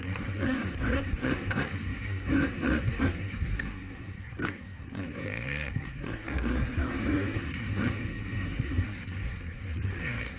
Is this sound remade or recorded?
remade